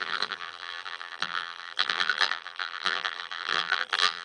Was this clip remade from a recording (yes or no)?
yes